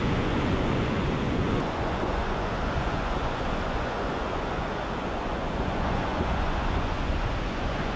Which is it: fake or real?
fake